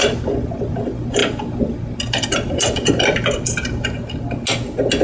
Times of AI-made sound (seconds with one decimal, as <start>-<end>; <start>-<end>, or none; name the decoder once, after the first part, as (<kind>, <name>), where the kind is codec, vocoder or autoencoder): none